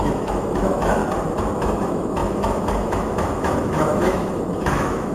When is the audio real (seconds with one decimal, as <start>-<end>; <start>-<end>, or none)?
1.0-1.6